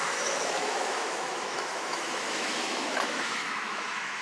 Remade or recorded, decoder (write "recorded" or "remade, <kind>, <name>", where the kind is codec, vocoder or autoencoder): remade, autoencoder, DAC-VAE